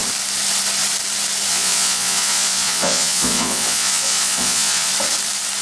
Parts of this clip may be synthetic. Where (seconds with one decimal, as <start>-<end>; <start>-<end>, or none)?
1.5-4.9